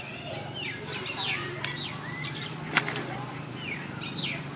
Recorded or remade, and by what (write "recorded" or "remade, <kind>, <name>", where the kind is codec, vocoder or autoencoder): recorded